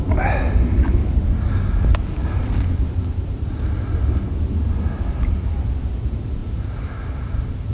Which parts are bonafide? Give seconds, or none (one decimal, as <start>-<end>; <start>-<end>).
0.0-7.7